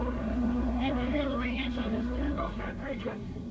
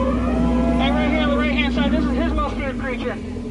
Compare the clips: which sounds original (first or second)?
second